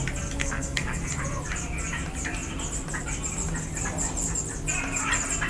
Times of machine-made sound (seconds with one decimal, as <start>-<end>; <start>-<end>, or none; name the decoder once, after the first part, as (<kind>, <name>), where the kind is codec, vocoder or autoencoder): 0.4-1.0 (codec, SNAC)